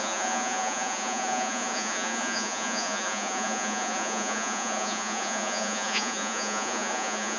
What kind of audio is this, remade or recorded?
remade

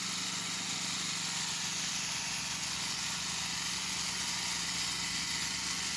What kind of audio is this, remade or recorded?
remade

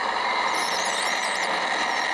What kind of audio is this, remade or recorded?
recorded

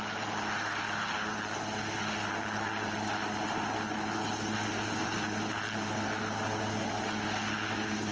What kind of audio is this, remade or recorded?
recorded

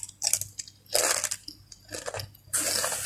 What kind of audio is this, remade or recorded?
recorded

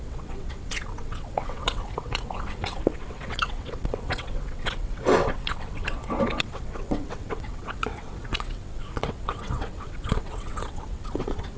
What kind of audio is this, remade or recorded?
remade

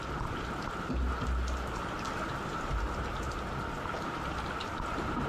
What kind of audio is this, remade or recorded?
recorded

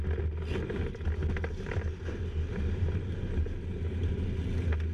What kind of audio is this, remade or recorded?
recorded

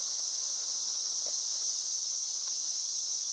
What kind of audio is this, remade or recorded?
remade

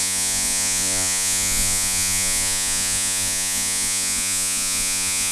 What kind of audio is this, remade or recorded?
remade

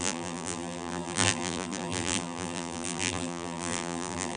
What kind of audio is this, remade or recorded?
remade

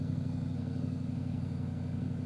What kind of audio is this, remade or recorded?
remade